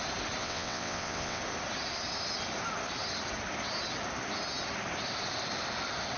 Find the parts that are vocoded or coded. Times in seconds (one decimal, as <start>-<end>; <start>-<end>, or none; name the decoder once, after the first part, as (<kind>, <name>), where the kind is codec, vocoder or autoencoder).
0.4-1.4 (vocoder, WaveNeXt)